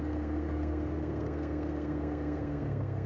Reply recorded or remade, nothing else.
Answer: remade